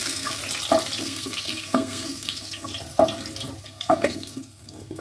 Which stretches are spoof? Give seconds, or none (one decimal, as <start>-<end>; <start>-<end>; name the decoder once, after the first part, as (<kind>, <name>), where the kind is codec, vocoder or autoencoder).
0.0-0.4 (codec, SNAC); 1.0-2.7; 3.6-5.0